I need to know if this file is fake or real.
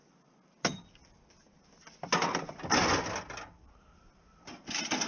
real